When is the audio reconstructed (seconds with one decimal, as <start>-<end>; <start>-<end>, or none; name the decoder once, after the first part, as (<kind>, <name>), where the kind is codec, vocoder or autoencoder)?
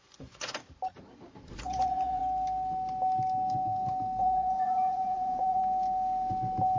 0.0-0.6 (vocoder, Vocos); 1.5-2.2; 4.2-5.6